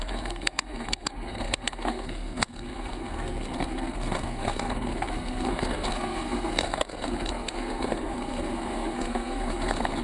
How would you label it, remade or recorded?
remade